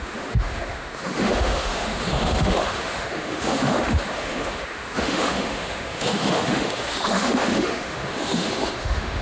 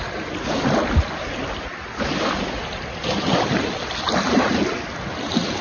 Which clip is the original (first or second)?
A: second